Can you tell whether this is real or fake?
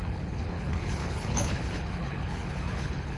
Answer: fake